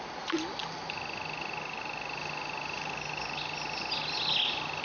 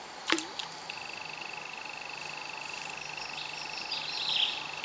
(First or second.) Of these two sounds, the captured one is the first